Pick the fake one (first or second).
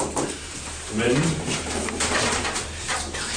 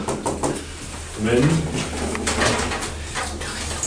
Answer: first